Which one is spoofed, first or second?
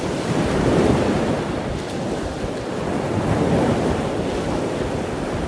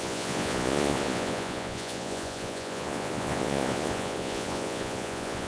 second